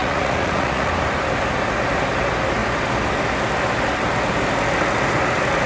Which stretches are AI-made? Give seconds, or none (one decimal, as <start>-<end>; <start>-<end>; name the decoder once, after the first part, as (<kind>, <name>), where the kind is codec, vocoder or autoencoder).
0.0-0.9 (vocoder, Vocos)